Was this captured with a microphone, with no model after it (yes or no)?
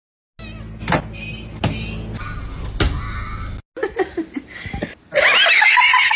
yes